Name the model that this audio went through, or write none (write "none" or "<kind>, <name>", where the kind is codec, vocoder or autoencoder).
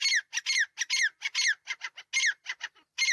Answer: none